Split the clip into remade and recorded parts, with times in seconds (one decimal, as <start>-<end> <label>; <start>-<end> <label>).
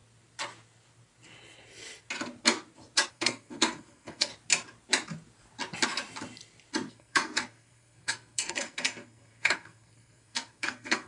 0.0-3.1 recorded; 3.1-4.3 remade; 4.3-6.9 recorded; 6.9-11.1 remade